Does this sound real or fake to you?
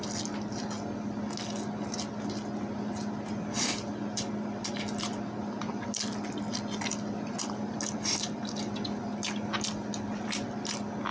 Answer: real